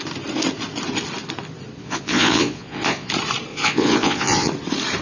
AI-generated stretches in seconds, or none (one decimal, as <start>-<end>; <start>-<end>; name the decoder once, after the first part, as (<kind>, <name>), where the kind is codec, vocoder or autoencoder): 1.8-3.1 (vocoder, Vocos); 3.5-4.5